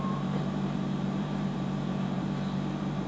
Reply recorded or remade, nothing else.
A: remade